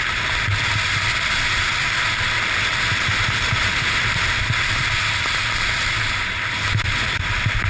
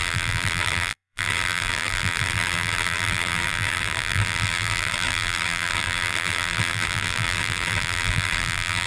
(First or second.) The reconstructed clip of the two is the second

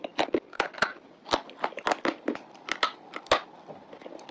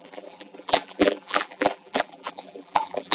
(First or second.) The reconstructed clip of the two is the second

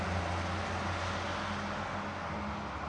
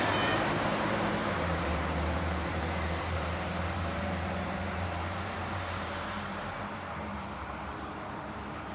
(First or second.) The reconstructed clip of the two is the second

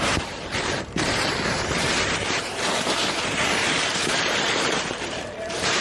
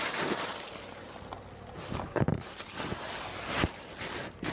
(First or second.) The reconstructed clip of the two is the first